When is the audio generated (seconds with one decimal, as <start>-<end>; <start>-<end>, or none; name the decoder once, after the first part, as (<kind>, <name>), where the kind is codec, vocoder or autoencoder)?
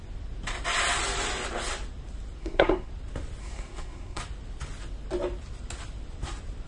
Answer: 2.4-2.9 (codec, SNAC); 3.4-4.2